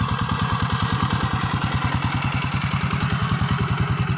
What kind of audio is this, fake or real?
real